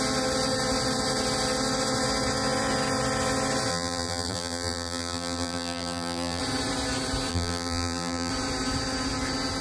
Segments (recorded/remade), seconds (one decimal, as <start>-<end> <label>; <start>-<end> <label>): 0.0-3.7 recorded; 3.7-6.4 remade; 6.4-7.3 recorded; 7.3-8.3 remade; 8.3-9.6 recorded